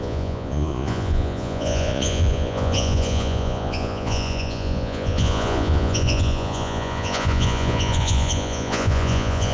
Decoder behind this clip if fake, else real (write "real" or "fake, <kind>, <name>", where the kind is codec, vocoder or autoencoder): fake, vocoder, Vocos